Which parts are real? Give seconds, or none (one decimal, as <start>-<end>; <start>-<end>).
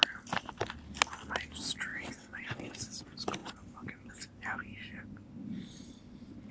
0.0-1.9; 3.0-6.5